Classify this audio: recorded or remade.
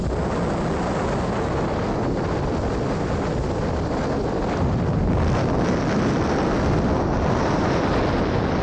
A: recorded